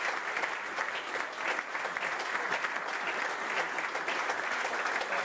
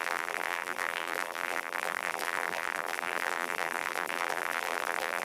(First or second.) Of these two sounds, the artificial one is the second